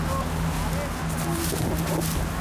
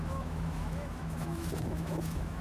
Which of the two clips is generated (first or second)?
second